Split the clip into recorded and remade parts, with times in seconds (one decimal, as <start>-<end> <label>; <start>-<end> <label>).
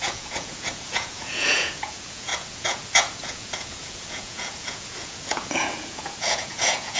0.0-7.0 remade